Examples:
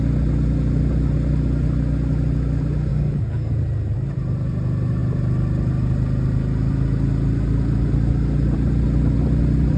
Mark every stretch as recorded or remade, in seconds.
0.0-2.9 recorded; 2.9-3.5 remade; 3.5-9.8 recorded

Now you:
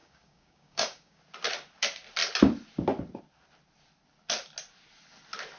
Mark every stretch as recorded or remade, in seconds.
0.0-1.2 remade; 1.2-5.6 recorded

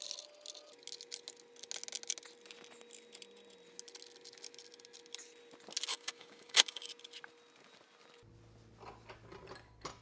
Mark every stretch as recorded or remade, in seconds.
0.0-5.9 recorded; 5.9-6.9 remade; 6.9-10.0 recorded